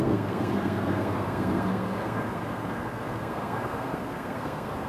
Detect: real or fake fake